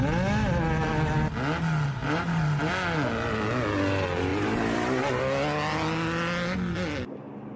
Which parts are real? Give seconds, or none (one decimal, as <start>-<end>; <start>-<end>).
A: 0.0-2.0; 2.7-4.3; 5.2-7.6